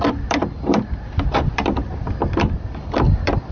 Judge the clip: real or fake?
fake